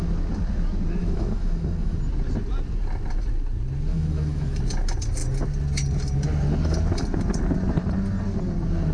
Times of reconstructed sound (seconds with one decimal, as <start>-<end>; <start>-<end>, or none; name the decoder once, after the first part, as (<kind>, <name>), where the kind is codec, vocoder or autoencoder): 1.0-2.0 (autoencoder, DAC-VAE); 3.9-4.6